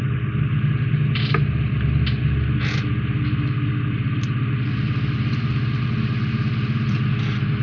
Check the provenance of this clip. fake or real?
real